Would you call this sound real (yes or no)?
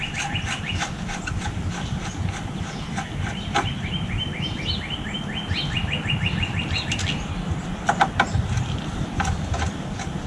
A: yes